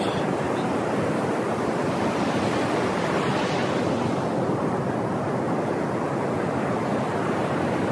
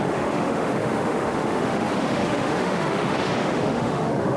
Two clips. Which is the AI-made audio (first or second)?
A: second